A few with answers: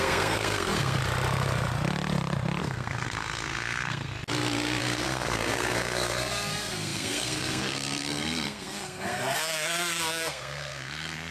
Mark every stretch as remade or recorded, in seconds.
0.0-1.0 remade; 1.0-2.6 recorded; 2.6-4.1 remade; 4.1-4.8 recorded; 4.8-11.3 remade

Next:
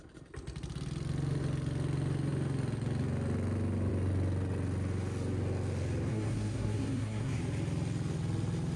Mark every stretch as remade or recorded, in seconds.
0.0-6.1 recorded; 6.1-7.4 remade; 7.4-8.8 recorded

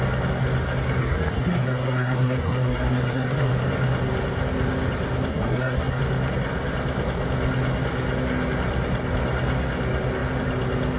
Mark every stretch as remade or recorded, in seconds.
0.0-1.0 recorded; 1.0-3.5 remade; 3.5-5.3 recorded; 5.3-6.0 remade; 6.0-11.0 recorded

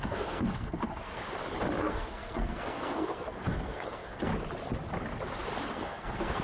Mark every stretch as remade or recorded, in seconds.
0.0-1.2 remade; 1.2-1.8 recorded; 1.8-4.3 remade; 4.3-5.7 recorded; 5.7-6.4 remade

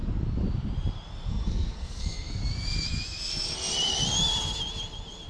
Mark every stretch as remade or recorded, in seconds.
0.0-1.3 recorded; 1.3-2.4 remade; 2.4-5.3 recorded

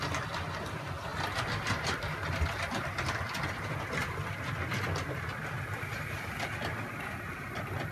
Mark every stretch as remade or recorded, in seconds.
0.0-7.9 recorded

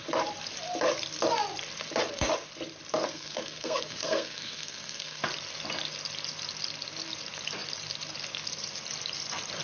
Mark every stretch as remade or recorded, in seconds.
0.0-3.1 recorded; 3.1-5.2 remade; 5.2-9.6 recorded